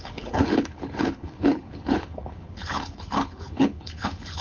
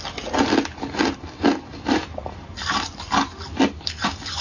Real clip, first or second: second